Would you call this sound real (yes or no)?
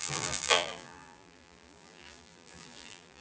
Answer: no